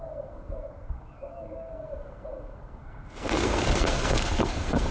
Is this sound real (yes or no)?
no